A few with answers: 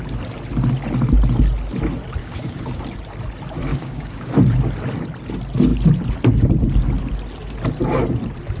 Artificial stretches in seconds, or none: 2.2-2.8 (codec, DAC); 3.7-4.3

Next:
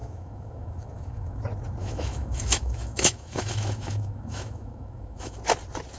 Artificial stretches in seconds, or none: 0.0-1.4 (autoencoder, DAC-VAE); 1.8-5.4

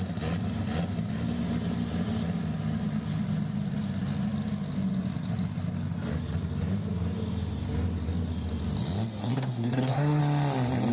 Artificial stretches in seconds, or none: 9.2-10.2 (codec, SNAC)

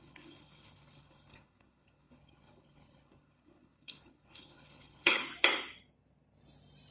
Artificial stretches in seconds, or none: 0.0-5.2 (codec, HILCodec)